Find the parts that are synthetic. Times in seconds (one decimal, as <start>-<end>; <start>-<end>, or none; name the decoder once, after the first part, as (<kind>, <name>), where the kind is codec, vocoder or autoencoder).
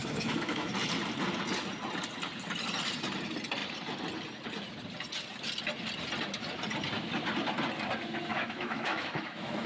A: 0.0-0.7 (autoencoder, DAC-VAE); 8.3-9.7